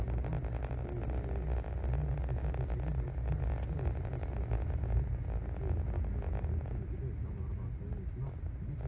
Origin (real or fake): real